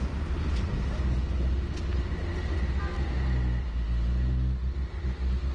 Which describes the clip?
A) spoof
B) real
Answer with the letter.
B